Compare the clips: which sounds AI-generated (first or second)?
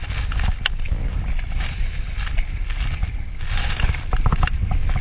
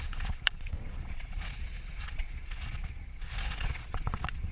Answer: second